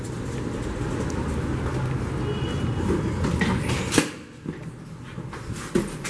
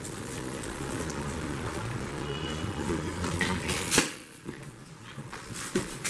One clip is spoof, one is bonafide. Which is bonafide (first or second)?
first